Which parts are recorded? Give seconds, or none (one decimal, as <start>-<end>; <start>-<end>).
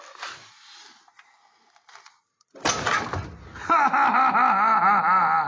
0.0-5.5